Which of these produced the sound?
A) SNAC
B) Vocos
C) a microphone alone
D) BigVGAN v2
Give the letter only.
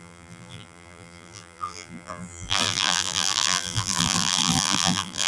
D